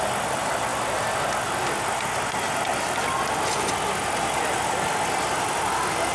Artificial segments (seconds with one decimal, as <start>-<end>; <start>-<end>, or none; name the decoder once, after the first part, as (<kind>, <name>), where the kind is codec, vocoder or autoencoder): none